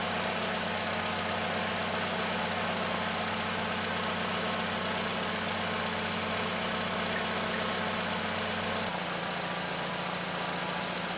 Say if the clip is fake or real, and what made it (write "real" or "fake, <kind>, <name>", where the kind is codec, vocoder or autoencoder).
real